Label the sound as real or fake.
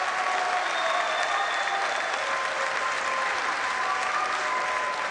real